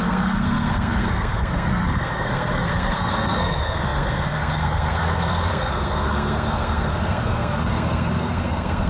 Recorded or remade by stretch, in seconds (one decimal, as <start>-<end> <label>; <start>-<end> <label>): 0.0-8.9 remade